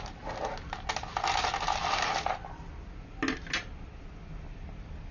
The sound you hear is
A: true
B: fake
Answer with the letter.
A